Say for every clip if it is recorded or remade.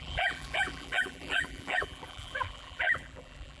remade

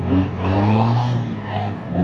remade